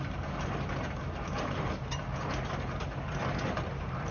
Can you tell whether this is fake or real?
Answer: fake